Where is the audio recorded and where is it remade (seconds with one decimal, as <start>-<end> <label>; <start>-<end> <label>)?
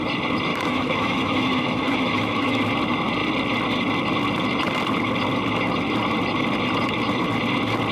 0.0-0.5 recorded; 0.5-2.6 remade; 2.6-7.9 recorded